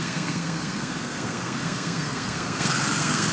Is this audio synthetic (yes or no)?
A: yes